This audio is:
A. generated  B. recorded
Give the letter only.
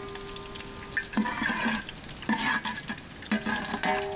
B